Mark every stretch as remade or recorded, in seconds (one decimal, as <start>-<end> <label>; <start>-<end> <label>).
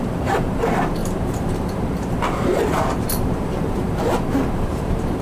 0.0-5.2 remade